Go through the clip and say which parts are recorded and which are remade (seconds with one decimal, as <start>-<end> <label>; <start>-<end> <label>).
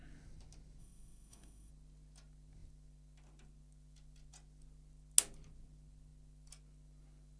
0.0-0.8 recorded; 0.8-1.7 remade; 1.7-7.4 recorded